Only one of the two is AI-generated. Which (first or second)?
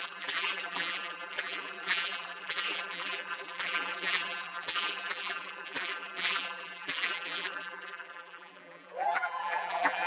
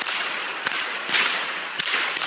first